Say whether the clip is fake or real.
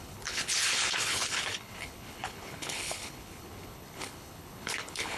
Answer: fake